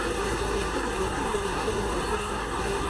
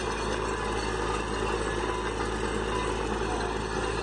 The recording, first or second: second